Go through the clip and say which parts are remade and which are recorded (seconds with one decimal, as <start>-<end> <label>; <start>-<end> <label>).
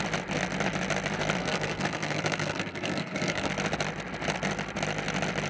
0.0-1.4 recorded; 1.4-3.5 remade; 3.5-5.5 recorded